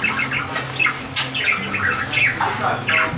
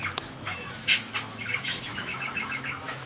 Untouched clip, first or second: first